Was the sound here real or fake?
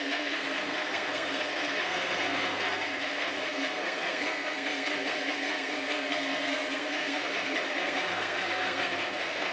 fake